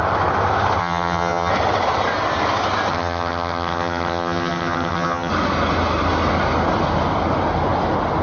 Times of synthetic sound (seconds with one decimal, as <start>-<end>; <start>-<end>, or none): 0.8-1.5; 2.9-5.3